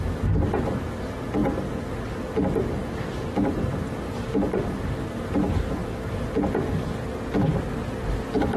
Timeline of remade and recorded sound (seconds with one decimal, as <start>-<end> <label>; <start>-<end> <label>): 0.0-8.6 recorded